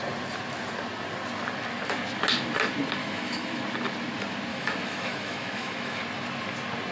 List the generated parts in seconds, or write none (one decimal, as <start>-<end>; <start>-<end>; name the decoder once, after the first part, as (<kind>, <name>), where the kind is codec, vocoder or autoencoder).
3.0-3.6 (autoencoder, DAC-VAE); 4.5-6.0

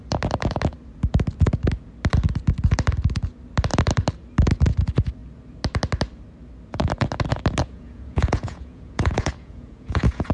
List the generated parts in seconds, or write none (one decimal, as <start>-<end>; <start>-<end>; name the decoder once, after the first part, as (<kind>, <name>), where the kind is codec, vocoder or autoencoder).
7.6-10.3 (vocoder, Vocos)

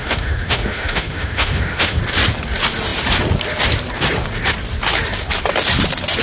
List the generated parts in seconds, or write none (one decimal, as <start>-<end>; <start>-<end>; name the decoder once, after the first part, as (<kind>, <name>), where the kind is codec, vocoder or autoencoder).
0.0-2.0 (autoencoder, DAC-VAE)

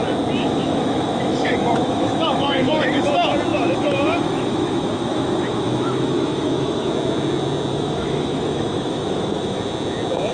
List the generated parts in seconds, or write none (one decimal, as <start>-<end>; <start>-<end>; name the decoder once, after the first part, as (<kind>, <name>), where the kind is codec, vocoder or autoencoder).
0.4-3.1 (autoencoder, DAC-VAE); 3.5-6.9; 7.7-9.6